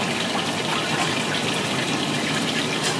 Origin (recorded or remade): recorded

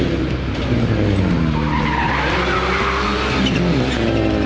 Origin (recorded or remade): recorded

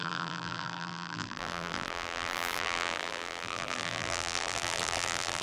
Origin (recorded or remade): remade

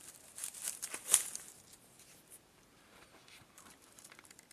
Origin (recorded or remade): remade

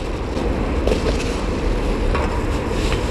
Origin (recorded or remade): recorded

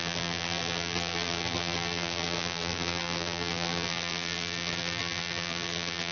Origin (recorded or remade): remade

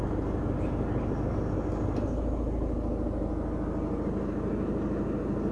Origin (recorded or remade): recorded